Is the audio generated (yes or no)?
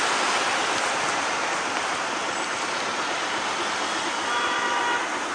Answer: no